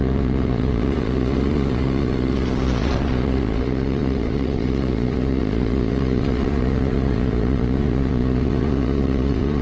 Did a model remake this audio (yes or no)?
yes